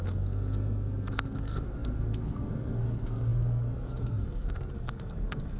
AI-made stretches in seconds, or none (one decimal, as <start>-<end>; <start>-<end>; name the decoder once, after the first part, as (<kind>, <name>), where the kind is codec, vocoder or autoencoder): 0.0-5.6 (codec, SNAC)

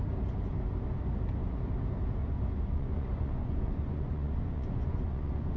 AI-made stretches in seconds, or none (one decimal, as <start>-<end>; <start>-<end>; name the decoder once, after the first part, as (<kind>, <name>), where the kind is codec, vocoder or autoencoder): 2.2-5.6 (vocoder, Vocos)